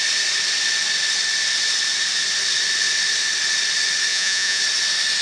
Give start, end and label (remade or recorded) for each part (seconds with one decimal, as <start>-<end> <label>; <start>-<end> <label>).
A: 0.0-4.1 recorded; 4.1-4.6 remade; 4.6-5.2 recorded